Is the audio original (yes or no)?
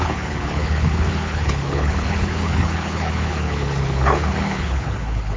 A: no